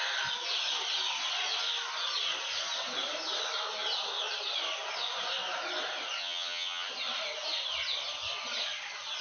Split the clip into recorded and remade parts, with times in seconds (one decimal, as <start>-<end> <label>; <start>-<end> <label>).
0.0-6.2 recorded; 6.2-6.9 remade; 6.9-9.2 recorded